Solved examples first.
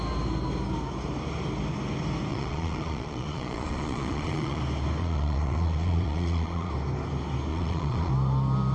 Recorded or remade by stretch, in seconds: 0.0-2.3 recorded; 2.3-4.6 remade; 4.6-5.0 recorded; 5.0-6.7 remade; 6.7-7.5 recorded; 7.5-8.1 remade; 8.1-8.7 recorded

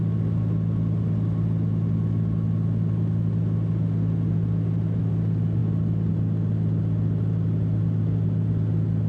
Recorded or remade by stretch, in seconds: 0.0-9.1 recorded

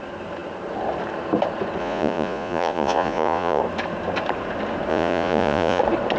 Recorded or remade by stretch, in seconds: 0.0-1.8 recorded; 1.8-3.6 remade; 3.6-4.9 recorded; 4.9-5.8 remade; 5.8-6.2 recorded

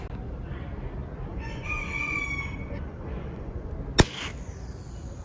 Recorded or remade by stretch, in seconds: 0.0-1.3 recorded; 1.3-2.2 remade; 2.2-2.6 recorded; 2.6-3.7 remade; 3.7-5.2 recorded